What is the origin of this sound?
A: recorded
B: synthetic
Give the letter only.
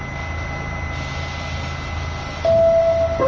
A